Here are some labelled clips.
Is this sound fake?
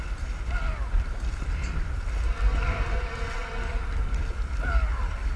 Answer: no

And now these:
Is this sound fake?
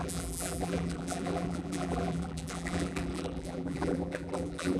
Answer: yes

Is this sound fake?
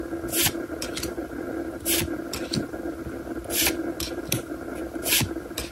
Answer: no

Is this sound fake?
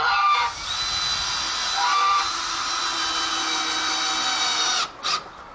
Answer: no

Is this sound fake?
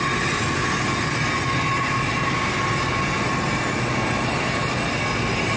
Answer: no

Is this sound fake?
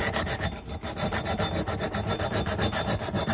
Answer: no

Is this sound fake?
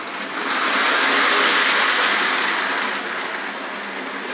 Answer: no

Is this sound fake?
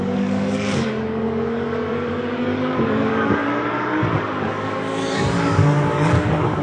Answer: yes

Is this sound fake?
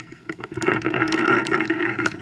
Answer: yes